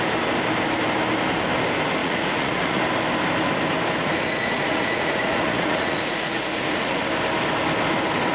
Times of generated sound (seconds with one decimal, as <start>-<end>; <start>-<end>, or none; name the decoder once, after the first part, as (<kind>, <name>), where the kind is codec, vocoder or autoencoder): 2.0-2.8 (vocoder, Vocos); 4.0-7.0